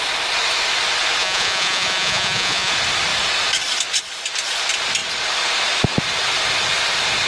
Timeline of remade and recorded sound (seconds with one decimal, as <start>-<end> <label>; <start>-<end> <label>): 0.0-1.2 recorded; 1.2-2.7 remade; 2.7-7.3 recorded